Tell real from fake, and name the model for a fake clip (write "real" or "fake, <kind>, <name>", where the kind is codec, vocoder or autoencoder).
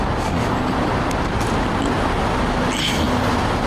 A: real